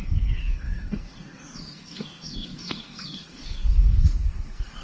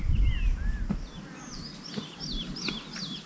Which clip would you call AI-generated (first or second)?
first